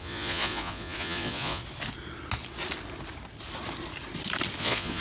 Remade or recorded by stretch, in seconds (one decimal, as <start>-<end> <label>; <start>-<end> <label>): 0.0-1.6 remade; 1.6-4.6 recorded; 4.6-5.0 remade